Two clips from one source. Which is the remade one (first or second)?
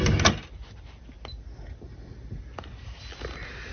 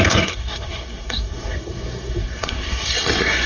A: second